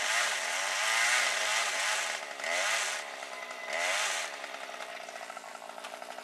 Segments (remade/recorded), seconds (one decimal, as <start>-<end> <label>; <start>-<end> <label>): 0.0-6.2 recorded